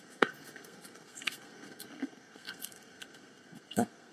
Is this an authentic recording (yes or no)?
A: no